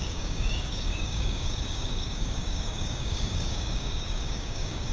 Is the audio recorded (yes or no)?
no